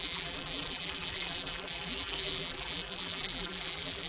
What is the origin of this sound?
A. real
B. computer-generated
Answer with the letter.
B